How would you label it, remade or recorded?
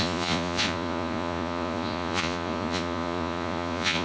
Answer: remade